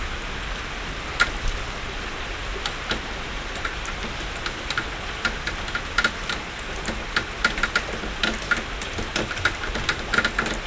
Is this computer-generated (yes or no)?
no